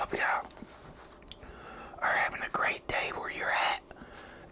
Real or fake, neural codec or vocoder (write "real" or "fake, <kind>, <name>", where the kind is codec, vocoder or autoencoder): real